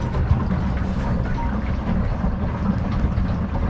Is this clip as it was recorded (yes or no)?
yes